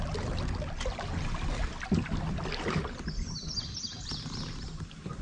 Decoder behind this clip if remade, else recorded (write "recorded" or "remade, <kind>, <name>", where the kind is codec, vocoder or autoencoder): recorded